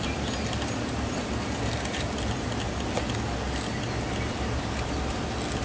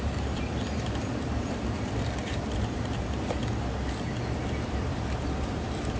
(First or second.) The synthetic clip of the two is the second